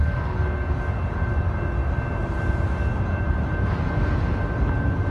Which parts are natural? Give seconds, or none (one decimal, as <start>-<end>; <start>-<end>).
0.0-5.1